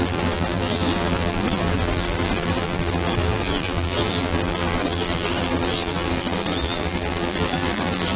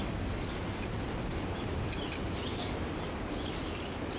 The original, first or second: second